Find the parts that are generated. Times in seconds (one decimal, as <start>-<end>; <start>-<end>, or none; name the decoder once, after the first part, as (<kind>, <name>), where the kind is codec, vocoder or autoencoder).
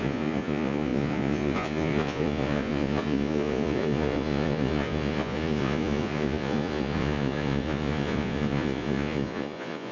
0.0-9.9 (vocoder, Vocos)